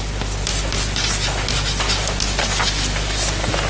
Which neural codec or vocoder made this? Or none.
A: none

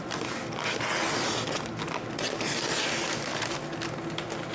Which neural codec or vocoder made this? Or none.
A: none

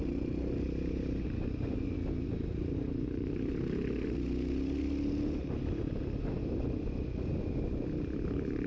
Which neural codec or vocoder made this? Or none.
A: none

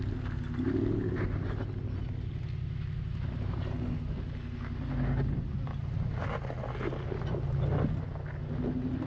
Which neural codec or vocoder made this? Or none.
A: none